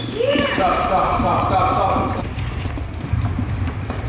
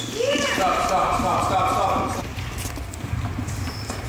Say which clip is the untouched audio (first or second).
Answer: second